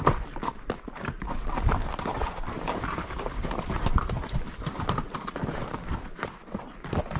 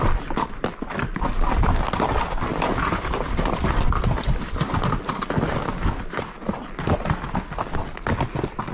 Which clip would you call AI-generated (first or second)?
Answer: first